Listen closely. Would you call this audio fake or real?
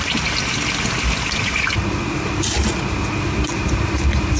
real